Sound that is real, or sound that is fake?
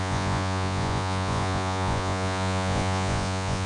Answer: fake